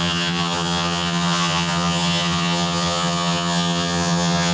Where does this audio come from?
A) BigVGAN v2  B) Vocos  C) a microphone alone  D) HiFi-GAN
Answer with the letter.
D